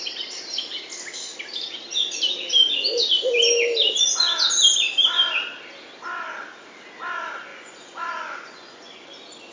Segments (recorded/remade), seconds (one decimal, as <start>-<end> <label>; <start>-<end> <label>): 0.0-7.5 recorded; 7.5-9.1 remade; 9.1-9.5 recorded